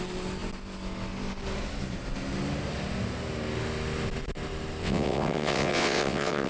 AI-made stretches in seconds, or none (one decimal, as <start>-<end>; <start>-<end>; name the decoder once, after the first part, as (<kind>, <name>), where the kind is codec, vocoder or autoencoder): 4.8-6.5 (vocoder, WaveNeXt)